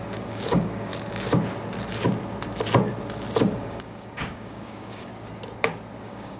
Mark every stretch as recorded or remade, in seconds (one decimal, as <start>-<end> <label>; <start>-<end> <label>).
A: 0.0-0.9 remade; 0.9-3.4 recorded; 3.4-5.1 remade; 5.1-6.0 recorded; 6.0-6.4 remade